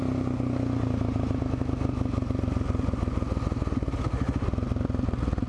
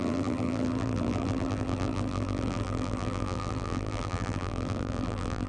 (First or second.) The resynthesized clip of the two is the second